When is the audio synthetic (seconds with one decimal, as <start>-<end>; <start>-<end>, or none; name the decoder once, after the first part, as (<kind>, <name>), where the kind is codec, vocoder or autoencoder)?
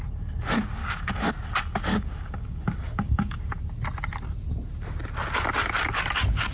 0.8-1.3 (codec, DAC); 1.9-3.5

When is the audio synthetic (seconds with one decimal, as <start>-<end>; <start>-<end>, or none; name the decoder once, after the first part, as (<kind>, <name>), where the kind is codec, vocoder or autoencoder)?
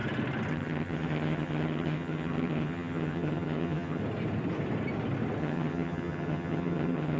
0.5-4.0 (vocoder, HiFi-GAN); 5.4-7.2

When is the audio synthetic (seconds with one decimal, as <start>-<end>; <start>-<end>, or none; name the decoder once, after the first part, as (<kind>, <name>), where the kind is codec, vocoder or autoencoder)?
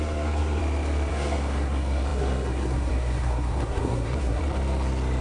0.0-0.6 (codec, SNAC); 1.1-4.4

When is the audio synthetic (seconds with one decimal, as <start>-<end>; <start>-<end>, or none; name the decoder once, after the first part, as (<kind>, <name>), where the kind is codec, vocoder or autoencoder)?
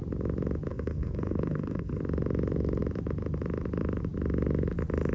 0.7-2.0 (codec, SNAC)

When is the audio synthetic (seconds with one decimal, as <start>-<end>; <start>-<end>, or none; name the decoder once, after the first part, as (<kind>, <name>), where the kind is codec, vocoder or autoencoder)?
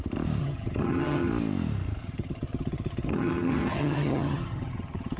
0.4-1.3 (vocoder, HiFi-GAN); 2.0-5.2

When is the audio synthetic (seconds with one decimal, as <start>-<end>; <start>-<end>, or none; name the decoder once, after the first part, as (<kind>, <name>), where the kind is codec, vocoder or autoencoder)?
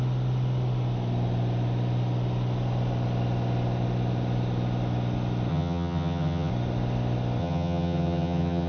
5.5-6.5 (vocoder, HiFi-GAN); 7.4-8.7